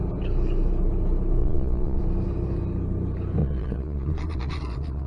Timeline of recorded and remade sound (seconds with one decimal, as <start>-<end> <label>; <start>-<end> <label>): 0.0-1.4 recorded; 1.4-2.0 remade; 2.0-3.4 recorded; 3.4-5.1 remade